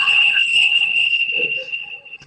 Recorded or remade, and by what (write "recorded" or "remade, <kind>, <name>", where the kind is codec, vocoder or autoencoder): remade, codec, HILCodec